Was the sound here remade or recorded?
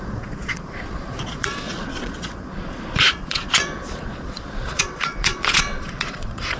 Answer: remade